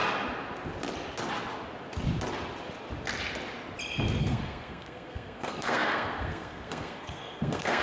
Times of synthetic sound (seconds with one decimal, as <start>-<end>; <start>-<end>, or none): 4.2-7.8